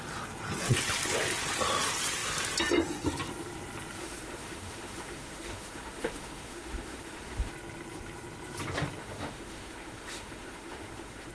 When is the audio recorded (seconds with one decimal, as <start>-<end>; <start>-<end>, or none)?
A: 0.0-4.0; 7.5-9.0